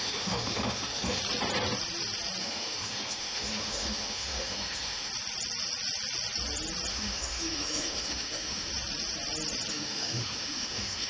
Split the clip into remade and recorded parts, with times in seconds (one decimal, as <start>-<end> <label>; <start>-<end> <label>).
0.0-1.2 remade; 1.2-2.4 recorded; 2.4-5.1 remade; 5.1-6.9 recorded; 6.9-8.7 remade; 8.7-9.7 recorded; 9.7-11.1 remade